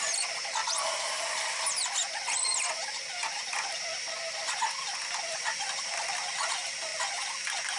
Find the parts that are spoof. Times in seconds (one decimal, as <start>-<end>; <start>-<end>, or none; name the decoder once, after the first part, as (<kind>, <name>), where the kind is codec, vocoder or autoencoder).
0.0-0.6 (vocoder, BigVGAN v2); 5.3-7.8